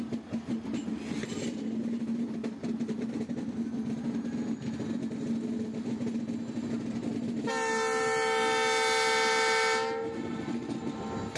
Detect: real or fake real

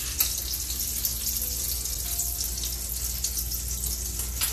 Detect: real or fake real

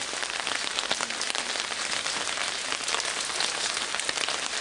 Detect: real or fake real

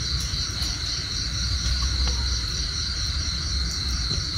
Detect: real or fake real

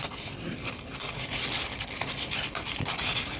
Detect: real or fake real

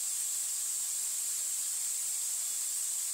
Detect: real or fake fake